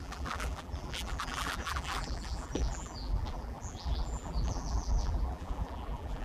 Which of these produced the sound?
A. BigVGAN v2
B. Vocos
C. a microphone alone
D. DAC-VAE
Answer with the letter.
A